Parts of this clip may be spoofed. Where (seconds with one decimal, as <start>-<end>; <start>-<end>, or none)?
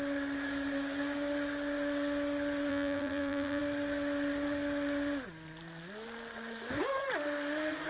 2.7-3.6